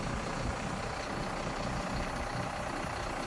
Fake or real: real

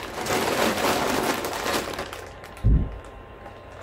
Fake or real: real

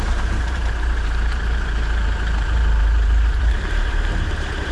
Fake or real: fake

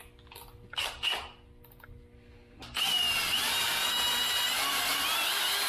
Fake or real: real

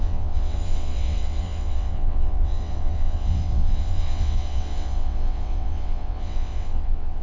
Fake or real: fake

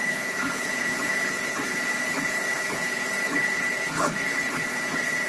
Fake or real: fake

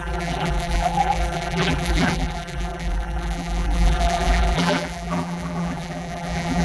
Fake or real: fake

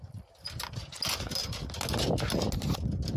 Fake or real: real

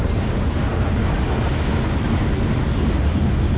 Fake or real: real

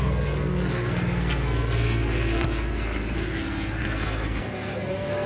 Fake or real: fake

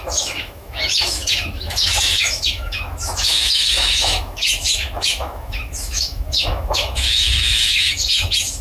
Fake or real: fake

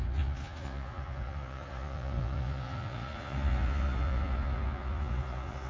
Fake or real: fake